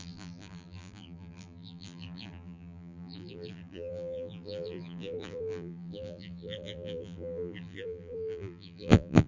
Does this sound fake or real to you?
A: fake